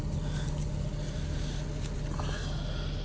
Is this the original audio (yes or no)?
yes